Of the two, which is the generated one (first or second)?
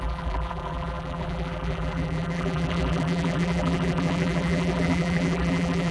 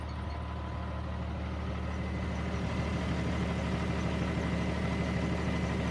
first